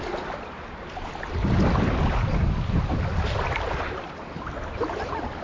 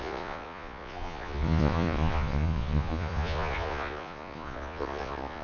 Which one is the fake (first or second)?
second